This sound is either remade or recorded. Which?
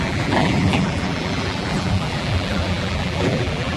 remade